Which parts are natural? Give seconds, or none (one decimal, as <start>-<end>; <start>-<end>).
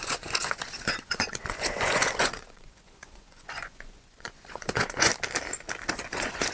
5.1-5.9